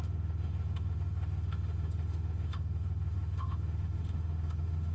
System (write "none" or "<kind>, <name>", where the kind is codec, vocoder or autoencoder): autoencoder, DAC-VAE